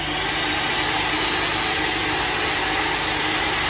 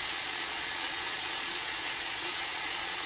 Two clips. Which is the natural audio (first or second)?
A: first